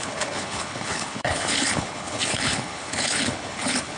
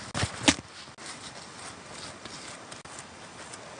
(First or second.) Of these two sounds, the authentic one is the second